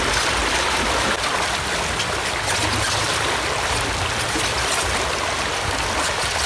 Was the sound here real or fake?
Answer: real